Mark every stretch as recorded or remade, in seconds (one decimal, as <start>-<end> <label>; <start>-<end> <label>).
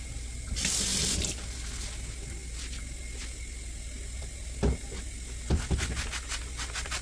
0.0-7.0 recorded